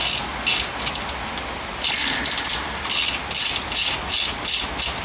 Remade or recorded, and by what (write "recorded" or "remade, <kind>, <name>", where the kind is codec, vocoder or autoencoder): recorded